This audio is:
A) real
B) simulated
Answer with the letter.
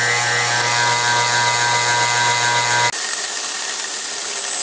A